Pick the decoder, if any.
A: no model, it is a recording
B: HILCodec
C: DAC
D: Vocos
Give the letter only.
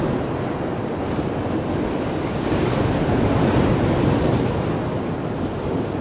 A